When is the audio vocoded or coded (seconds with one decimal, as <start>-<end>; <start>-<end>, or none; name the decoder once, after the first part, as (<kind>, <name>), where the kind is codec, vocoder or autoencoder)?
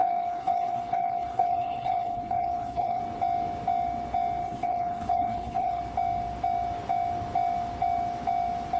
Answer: 0.0-3.0 (codec, HILCodec); 4.4-5.8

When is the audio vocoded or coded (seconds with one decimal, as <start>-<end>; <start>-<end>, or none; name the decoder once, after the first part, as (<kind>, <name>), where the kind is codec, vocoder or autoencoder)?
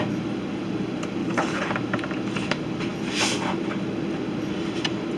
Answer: 1.2-1.7 (codec, HILCodec)